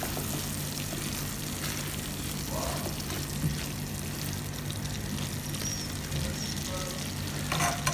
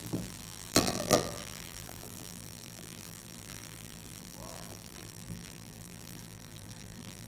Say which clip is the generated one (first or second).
second